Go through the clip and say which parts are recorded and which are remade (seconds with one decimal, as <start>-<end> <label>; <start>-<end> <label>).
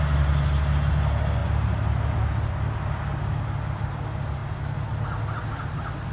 0.0-6.1 recorded